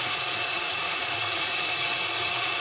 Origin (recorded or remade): remade